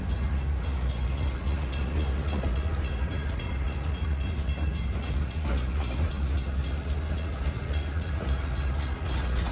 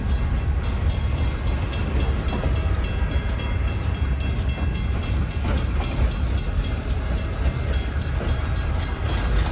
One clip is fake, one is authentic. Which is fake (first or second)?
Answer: first